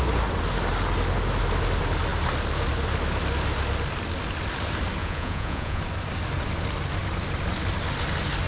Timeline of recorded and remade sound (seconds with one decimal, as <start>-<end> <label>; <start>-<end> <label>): 0.0-5.0 recorded; 5.0-5.8 remade; 5.8-8.5 recorded